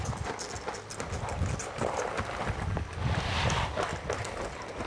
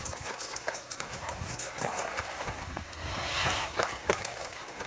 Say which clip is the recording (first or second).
first